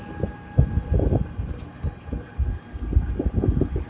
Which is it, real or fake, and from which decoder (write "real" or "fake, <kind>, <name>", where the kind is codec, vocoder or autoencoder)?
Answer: real